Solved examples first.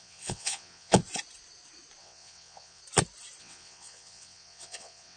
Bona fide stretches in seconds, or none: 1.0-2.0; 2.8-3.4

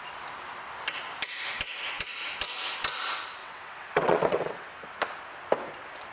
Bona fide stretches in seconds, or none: 0.0-3.4; 4.7-6.1

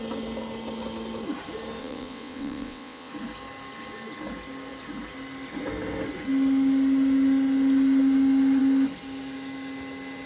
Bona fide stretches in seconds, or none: 0.0-1.8; 3.1-10.3

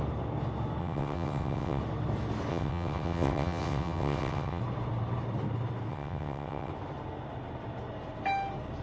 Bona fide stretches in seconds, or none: 0.0-0.8; 1.8-2.5; 4.6-5.9; 6.7-8.8

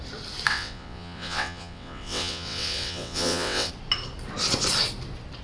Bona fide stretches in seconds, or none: 0.0-0.5; 3.7-5.4

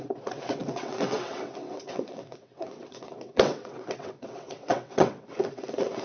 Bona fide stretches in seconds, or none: none

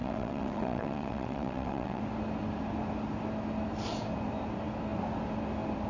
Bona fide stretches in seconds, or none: 2.0-5.9